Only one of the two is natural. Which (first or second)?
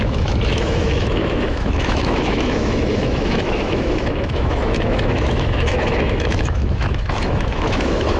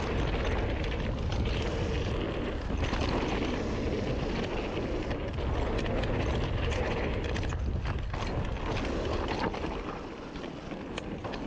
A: second